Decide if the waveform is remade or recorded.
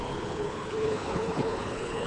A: remade